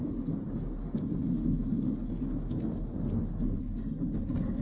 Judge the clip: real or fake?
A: real